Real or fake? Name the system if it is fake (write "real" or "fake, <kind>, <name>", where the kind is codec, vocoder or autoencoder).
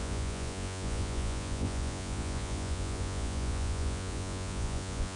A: fake, vocoder, Vocos